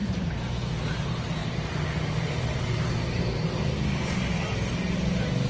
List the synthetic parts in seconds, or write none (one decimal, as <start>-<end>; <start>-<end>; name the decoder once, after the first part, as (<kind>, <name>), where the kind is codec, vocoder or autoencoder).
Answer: 0.0-0.7 (vocoder, BigVGAN v2); 1.4-4.5